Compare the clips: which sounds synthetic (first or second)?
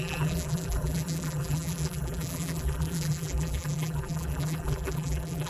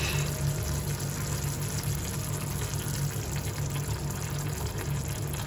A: first